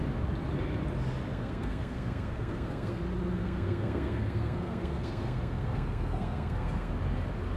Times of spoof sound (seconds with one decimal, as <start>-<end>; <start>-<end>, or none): 1.3-3.0; 3.4-6.9